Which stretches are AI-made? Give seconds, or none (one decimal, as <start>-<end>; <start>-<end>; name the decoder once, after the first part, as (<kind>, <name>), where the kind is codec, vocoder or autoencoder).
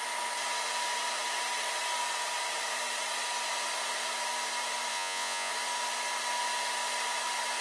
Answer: 4.9-5.5 (vocoder, Vocos)